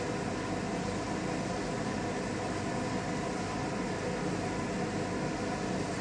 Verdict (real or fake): real